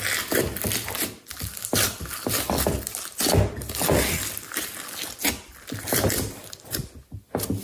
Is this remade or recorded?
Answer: recorded